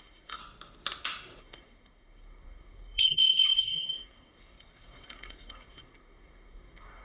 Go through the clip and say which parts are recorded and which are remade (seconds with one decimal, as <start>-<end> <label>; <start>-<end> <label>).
0.0-0.4 remade; 0.4-1.4 recorded; 1.4-7.0 remade